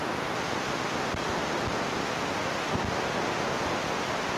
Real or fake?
real